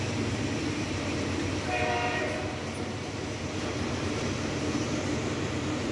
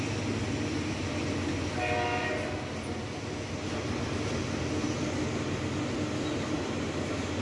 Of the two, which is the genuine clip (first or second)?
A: second